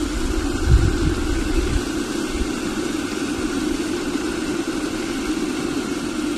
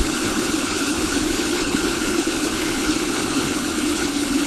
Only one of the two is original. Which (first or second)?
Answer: first